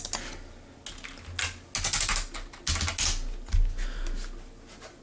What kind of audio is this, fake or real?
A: real